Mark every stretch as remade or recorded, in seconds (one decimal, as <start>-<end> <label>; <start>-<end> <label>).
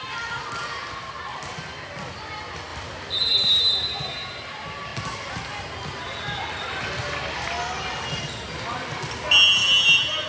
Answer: 0.0-10.3 recorded